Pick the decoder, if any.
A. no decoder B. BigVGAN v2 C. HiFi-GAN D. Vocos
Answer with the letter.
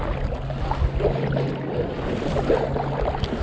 A